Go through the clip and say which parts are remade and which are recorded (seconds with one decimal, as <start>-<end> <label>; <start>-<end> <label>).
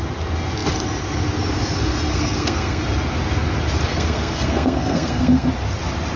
0.0-2.1 recorded; 2.1-2.8 remade; 2.8-3.9 recorded; 3.9-5.5 remade; 5.5-6.2 recorded